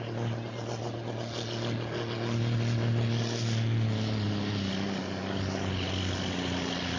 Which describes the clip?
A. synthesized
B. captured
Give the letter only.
B